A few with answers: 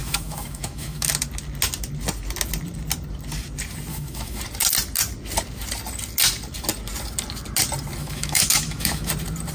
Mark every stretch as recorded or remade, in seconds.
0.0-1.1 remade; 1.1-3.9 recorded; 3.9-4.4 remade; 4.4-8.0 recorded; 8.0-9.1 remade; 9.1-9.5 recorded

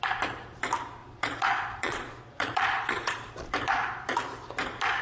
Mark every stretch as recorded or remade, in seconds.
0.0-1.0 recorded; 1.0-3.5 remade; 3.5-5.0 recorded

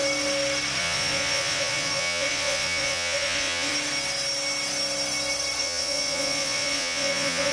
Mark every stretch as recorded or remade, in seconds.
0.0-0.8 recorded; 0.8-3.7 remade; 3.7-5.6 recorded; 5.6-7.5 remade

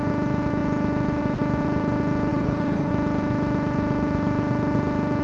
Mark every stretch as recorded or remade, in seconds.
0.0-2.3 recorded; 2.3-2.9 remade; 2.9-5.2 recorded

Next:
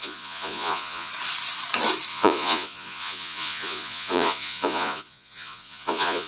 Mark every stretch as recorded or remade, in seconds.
0.0-1.1 remade; 1.1-2.1 recorded; 2.1-6.3 remade

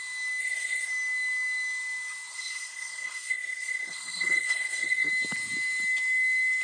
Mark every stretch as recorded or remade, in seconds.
0.0-0.4 recorded; 0.4-0.9 remade; 0.9-2.3 recorded; 2.3-5.1 remade; 5.1-6.6 recorded